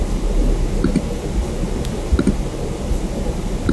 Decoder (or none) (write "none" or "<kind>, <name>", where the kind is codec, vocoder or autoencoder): none